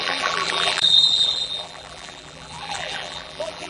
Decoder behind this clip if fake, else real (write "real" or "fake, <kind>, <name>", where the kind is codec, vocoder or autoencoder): fake, vocoder, BigVGAN v2